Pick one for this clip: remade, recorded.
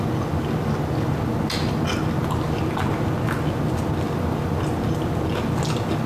recorded